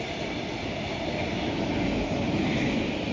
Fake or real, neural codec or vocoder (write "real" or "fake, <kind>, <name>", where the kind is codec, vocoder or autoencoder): real